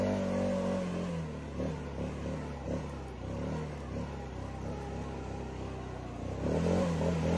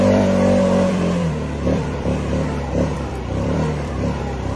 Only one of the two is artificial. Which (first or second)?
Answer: second